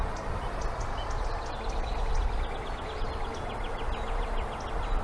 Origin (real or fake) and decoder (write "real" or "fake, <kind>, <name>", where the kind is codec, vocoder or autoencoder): real